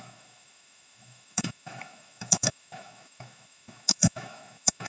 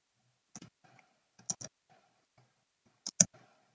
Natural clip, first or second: second